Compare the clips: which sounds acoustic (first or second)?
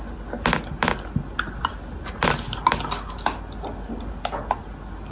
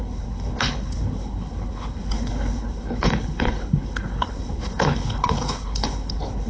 first